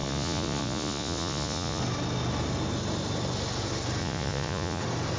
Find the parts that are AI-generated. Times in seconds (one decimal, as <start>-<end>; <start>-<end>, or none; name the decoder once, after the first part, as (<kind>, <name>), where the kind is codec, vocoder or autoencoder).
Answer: 0.0-1.8 (vocoder, Vocos); 4.0-4.8